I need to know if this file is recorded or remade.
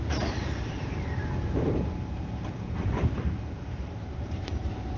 remade